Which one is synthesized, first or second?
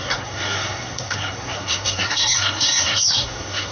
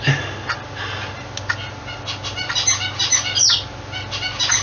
first